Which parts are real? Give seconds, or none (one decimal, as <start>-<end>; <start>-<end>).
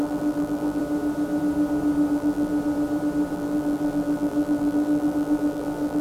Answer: 0.8-2.1; 2.5-3.3